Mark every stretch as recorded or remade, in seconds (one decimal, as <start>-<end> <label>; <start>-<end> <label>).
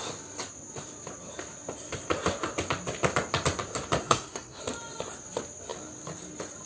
0.0-4.0 recorded; 4.0-4.6 remade; 4.6-6.7 recorded